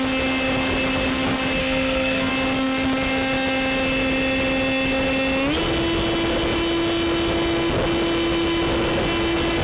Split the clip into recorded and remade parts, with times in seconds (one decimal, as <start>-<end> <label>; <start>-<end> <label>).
0.0-1.6 recorded; 1.6-2.3 remade; 2.3-9.6 recorded